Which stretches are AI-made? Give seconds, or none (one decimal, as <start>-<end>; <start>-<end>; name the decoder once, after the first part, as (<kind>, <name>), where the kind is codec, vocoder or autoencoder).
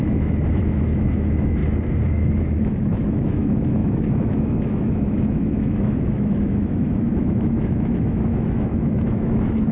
0.0-1.6 (autoencoder, DAC-VAE); 2.1-9.7